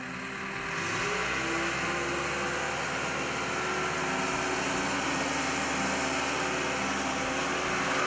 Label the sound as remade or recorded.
recorded